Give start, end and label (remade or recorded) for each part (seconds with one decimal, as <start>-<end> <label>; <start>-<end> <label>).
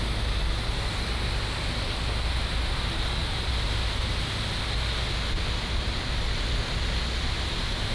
0.0-3.2 recorded; 3.2-4.1 remade; 4.1-7.9 recorded